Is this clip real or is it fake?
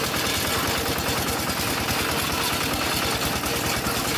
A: real